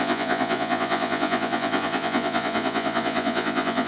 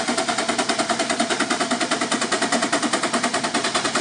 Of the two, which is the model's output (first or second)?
first